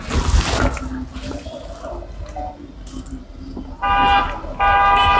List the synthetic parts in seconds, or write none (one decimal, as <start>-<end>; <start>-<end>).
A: none

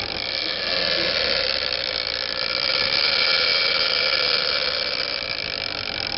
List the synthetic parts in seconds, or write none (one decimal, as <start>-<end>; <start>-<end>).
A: none

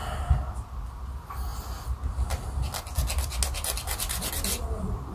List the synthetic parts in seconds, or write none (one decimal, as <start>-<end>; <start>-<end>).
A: none

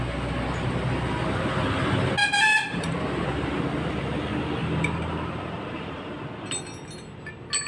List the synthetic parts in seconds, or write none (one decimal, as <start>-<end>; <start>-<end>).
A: 2.2-3.6; 4.6-6.3

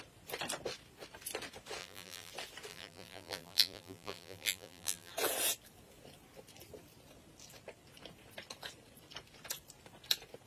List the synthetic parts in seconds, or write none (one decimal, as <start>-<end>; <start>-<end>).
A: 1.8-2.3; 2.7-5.1

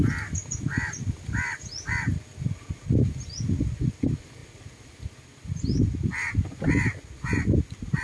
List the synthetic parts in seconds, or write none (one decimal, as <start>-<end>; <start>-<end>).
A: none

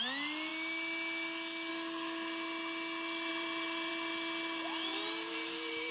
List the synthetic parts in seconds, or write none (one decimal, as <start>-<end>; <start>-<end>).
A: 3.3-3.9; 4.9-5.9

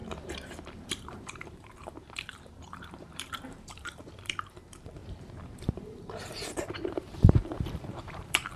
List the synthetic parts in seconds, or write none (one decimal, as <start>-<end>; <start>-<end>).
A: 0.0-8.6